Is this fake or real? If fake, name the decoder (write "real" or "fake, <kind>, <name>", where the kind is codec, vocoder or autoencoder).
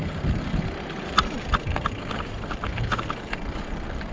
real